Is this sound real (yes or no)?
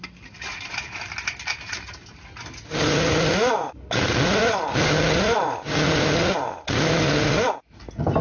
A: yes